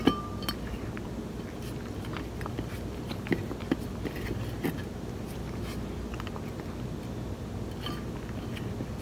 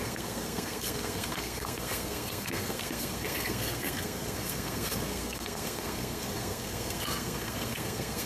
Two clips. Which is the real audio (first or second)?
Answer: first